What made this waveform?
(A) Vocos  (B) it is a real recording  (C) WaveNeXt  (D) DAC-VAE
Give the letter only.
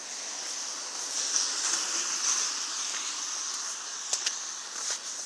B